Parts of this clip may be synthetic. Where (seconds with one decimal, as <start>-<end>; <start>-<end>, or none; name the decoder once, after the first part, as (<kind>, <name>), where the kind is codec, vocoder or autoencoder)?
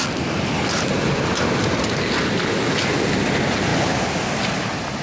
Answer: none